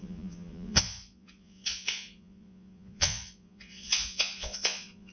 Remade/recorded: remade